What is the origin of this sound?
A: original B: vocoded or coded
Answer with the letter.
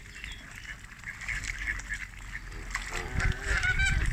A